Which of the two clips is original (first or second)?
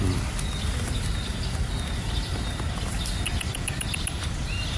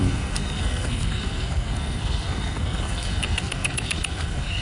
first